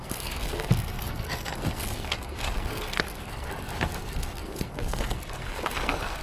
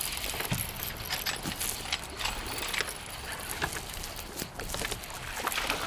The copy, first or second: first